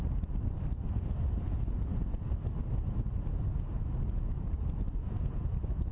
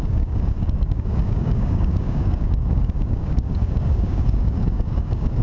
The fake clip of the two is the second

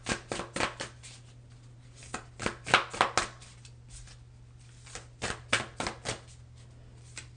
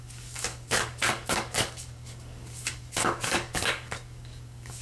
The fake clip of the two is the second